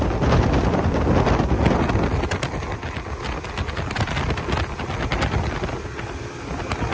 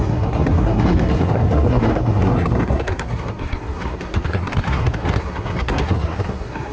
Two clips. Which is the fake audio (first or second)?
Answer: second